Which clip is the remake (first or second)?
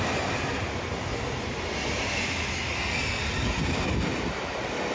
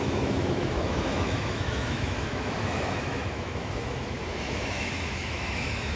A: second